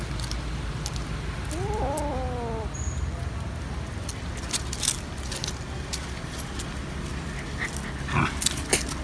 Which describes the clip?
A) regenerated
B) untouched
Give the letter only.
B